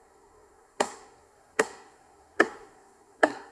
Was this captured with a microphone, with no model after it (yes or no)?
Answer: no